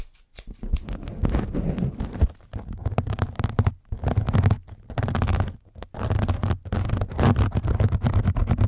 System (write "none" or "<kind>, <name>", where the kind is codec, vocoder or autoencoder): none